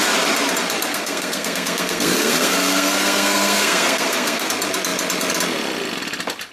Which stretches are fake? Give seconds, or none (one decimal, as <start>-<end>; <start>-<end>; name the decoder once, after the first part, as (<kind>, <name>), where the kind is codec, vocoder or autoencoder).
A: 0.9-4.5 (codec, SNAC)